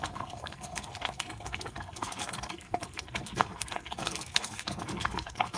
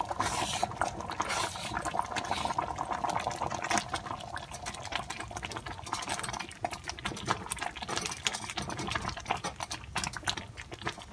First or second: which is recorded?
second